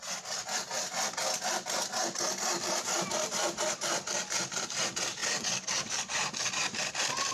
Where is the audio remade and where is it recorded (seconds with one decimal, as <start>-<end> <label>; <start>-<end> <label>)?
0.0-7.3 recorded